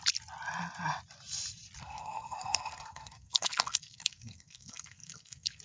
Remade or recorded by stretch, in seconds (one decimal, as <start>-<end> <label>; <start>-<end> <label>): 0.0-1.8 recorded; 1.8-5.6 remade